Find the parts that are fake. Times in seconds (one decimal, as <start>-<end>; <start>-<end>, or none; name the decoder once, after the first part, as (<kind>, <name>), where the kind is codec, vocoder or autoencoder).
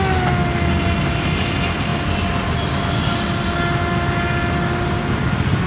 none